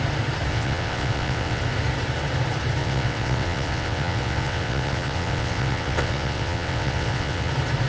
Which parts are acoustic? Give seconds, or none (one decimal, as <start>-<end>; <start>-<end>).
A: 0.0-0.5; 1.6-2.8; 7.5-7.9